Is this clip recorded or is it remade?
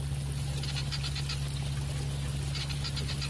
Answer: recorded